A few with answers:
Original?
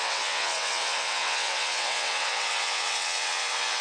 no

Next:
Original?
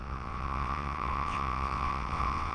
no